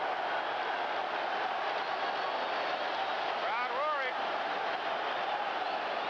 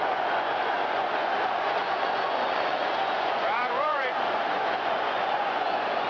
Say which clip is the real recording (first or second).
first